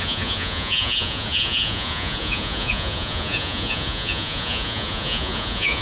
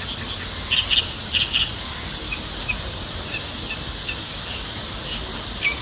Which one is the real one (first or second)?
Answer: second